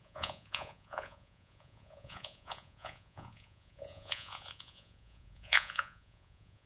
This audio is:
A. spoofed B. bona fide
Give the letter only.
A